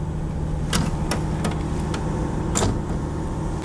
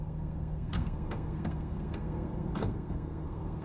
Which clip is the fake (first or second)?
second